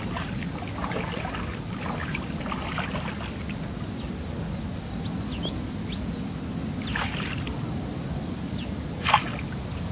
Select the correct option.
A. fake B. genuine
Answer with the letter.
B